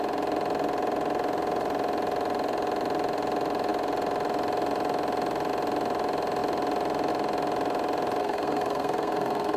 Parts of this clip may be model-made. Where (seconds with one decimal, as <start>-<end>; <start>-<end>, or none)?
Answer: 8.2-9.6